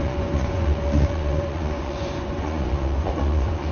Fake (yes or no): yes